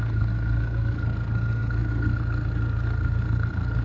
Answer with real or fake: fake